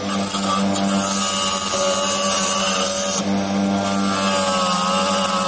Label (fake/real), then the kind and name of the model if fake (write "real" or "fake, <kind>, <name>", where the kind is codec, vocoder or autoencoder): real